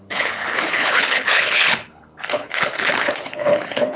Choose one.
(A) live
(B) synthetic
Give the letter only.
B